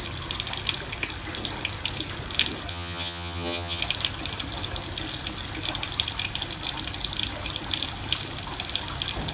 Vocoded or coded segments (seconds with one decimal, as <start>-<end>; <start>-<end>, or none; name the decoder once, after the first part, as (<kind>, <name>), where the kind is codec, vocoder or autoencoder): 2.7-3.8 (vocoder, HiFi-GAN)